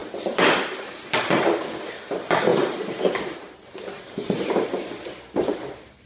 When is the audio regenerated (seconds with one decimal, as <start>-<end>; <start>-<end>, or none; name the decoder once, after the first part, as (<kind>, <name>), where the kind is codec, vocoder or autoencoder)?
2.5-3.6 (vocoder, BigVGAN v2)